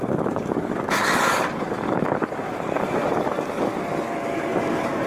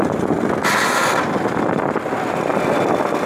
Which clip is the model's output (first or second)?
first